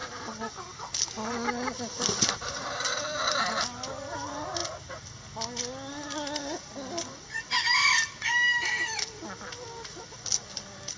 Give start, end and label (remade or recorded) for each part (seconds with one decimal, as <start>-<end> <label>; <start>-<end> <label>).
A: 0.0-11.0 recorded